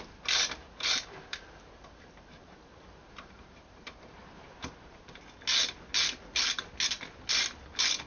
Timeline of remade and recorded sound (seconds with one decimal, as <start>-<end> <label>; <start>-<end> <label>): 0.0-0.6 recorded; 0.6-5.2 remade; 5.2-8.1 recorded